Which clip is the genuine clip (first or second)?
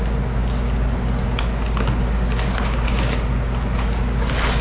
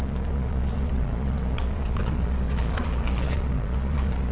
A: first